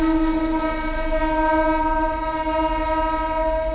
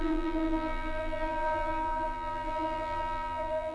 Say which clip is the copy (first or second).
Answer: second